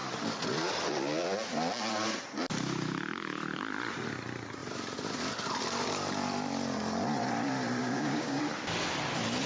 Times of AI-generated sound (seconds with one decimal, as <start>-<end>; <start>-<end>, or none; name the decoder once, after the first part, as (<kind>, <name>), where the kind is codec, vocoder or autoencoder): 7.8-8.4 (codec, DAC)